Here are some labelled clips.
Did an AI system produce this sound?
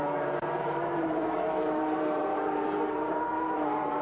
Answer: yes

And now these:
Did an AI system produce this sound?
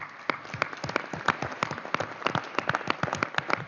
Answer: no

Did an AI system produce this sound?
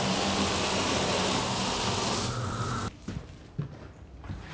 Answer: no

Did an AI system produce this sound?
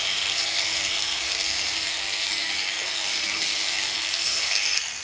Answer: yes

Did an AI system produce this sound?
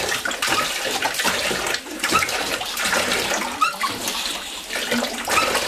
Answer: no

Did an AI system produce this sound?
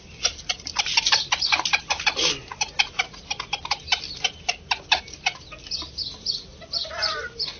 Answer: no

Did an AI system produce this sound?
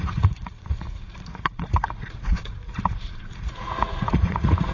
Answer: yes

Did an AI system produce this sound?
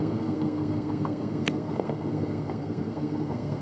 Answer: yes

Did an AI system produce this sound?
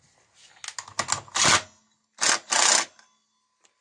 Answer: no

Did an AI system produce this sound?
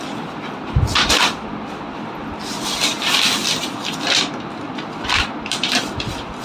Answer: no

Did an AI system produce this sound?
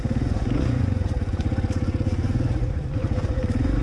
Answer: yes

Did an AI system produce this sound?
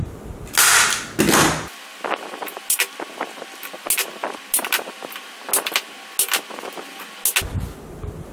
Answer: no